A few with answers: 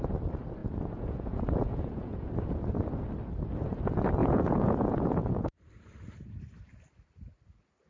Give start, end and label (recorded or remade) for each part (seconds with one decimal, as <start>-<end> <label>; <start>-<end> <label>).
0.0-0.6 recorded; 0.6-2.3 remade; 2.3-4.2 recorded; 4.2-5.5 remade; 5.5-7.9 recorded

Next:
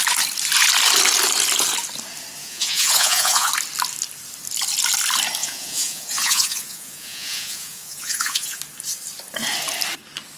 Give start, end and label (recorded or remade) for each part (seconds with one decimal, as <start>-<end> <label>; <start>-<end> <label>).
0.0-2.4 recorded; 2.4-3.5 remade; 3.5-5.4 recorded; 5.4-8.6 remade; 8.6-10.4 recorded

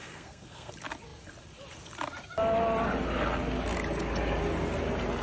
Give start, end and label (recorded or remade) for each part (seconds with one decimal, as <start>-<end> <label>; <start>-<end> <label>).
0.0-0.7 remade; 0.7-5.2 recorded